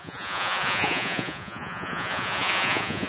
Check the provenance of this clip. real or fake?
fake